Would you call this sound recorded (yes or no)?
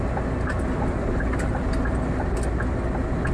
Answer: yes